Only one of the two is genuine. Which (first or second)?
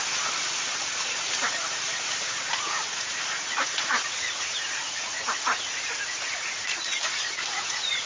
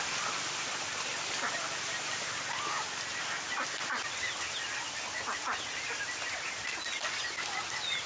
second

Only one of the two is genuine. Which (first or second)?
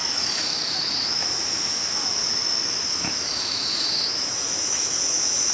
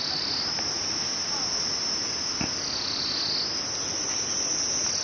second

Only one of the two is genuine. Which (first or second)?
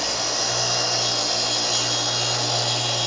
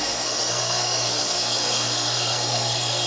first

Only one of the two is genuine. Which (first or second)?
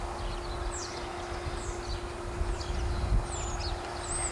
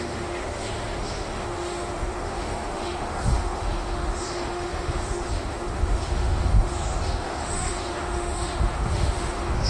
first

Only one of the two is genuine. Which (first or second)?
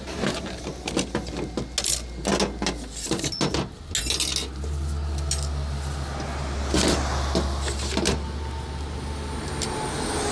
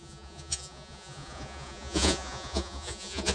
first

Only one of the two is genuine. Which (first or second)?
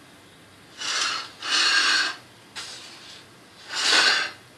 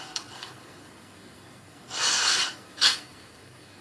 first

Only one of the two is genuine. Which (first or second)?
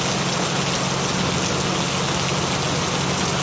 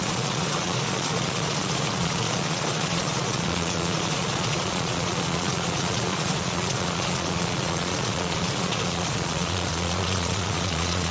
first